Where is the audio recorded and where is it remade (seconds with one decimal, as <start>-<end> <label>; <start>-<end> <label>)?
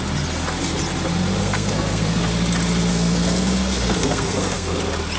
0.0-1.4 recorded; 1.4-2.2 remade; 2.2-2.9 recorded; 2.9-4.8 remade; 4.8-5.2 recorded